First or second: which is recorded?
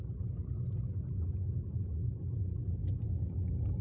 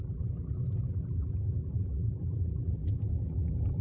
first